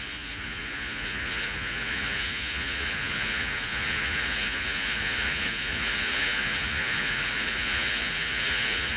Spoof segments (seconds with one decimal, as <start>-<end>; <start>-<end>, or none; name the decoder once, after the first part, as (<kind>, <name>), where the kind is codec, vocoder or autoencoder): 0.0-9.0 (vocoder, Vocos)